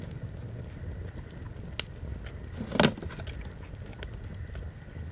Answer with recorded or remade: recorded